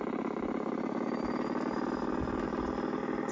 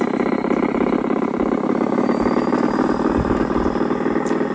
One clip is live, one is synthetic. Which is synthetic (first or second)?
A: second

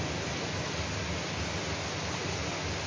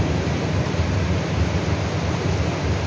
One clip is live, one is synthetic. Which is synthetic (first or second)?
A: second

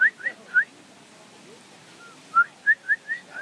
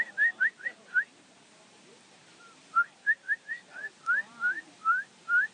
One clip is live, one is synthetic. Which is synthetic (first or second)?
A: second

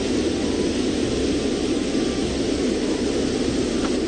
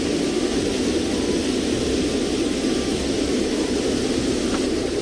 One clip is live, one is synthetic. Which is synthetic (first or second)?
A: second